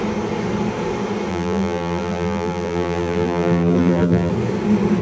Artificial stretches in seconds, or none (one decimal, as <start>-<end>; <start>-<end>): 1.3-4.3